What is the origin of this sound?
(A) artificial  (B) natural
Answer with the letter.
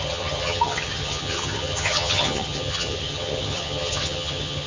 A